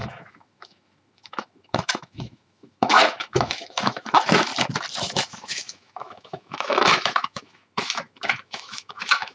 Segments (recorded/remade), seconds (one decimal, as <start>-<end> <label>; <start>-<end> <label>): 0.0-4.5 remade; 4.5-5.0 recorded; 5.0-9.3 remade

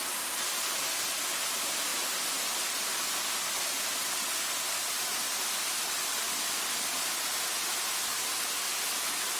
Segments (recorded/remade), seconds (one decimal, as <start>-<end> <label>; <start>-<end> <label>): 0.0-9.4 recorded

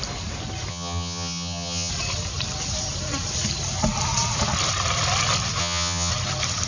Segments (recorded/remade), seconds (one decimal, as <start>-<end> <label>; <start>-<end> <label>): 0.0-0.7 recorded; 0.7-1.9 remade; 1.9-5.6 recorded; 5.6-6.1 remade; 6.1-6.7 recorded

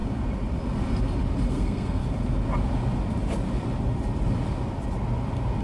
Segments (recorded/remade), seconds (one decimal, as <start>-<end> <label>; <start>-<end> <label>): 0.0-1.5 recorded; 1.5-2.0 remade; 2.0-5.6 recorded

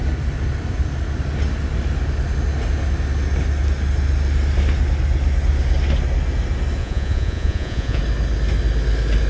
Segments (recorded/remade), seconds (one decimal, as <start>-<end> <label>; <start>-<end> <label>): 0.0-6.8 recorded; 6.8-8.0 remade; 8.0-9.3 recorded

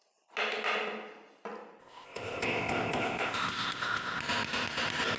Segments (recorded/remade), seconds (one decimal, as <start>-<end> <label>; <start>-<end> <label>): 0.0-1.8 recorded; 1.8-4.2 remade; 4.2-5.2 recorded

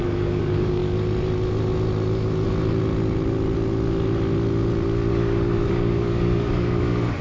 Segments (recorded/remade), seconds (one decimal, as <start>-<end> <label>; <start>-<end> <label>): 0.0-0.8 remade; 0.8-5.1 recorded; 5.1-7.2 remade